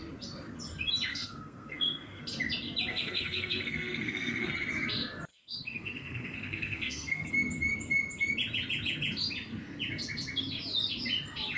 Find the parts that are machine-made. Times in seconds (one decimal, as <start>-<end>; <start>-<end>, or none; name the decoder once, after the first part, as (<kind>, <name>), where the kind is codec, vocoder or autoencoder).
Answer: 1.1-2.2 (codec, SNAC); 2.9-4.5; 5.3-7.3